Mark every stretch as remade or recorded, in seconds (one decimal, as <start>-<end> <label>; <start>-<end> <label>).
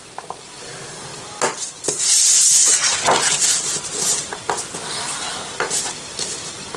0.0-1.1 remade; 1.1-2.0 recorded; 2.0-2.6 remade; 2.6-6.8 recorded